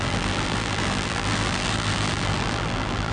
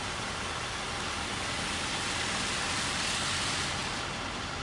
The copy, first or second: first